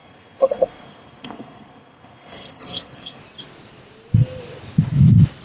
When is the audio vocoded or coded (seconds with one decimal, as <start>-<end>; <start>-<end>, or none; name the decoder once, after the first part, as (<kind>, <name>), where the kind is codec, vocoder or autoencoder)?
0.0-3.2 (codec, SNAC)